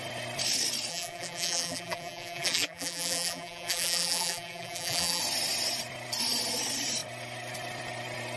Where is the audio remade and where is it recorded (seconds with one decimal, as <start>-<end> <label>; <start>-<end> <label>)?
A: 0.0-0.9 recorded; 0.9-5.2 remade; 5.2-8.4 recorded